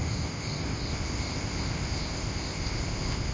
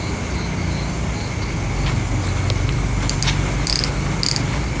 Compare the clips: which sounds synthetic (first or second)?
first